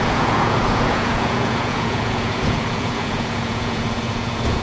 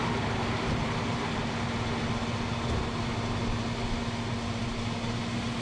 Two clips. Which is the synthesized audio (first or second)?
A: first